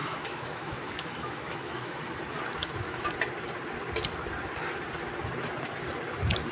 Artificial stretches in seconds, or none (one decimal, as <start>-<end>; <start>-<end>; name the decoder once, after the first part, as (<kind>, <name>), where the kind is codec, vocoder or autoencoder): 0.0-2.0 (autoencoder, DAC-VAE); 2.6-3.1